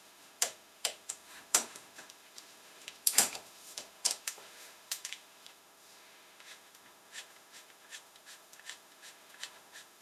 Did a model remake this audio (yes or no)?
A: yes